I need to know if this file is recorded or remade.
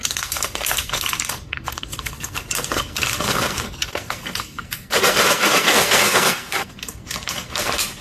remade